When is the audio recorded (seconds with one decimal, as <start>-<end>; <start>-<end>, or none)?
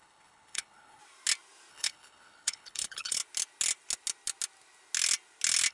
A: 1.0-1.7; 3.2-5.7